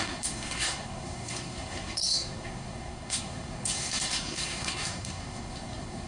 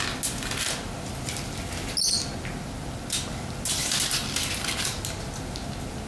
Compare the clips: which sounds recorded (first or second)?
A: second